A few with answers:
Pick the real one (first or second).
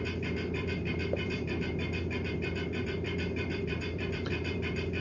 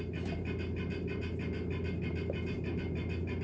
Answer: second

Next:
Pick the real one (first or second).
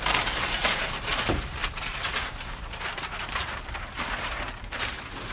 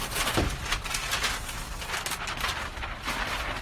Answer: second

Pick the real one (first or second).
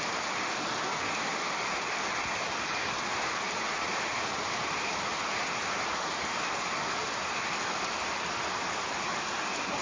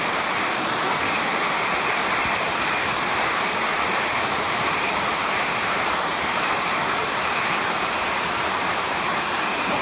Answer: first